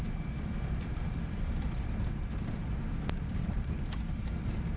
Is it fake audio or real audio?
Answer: fake